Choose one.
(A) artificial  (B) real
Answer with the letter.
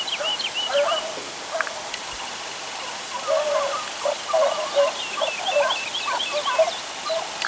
B